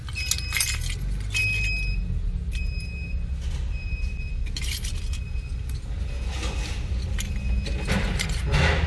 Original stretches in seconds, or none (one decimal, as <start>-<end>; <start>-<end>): 0.0-8.9